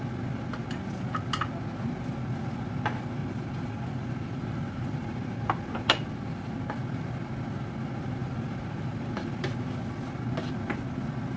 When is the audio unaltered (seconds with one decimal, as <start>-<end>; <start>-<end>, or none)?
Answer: 0.0-3.2; 6.5-8.2; 9.5-11.4